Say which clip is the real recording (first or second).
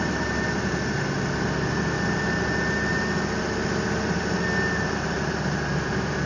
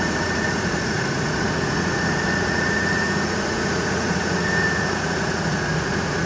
first